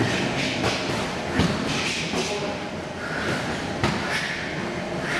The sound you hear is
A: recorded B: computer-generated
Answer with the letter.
A